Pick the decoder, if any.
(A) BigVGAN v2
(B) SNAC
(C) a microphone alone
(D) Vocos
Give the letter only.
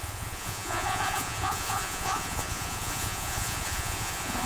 D